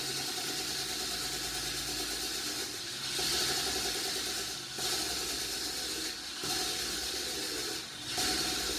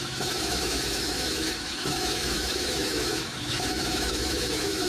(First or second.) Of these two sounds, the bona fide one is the first